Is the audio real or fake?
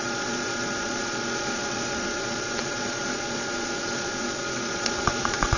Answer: fake